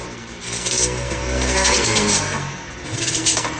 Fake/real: fake